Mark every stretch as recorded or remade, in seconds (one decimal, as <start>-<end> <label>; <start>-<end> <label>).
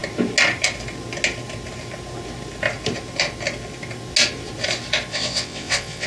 0.0-5.1 recorded; 5.1-6.1 remade